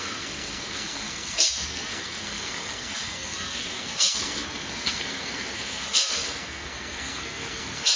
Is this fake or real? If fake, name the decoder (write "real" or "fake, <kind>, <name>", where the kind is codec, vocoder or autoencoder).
fake, codec, SNAC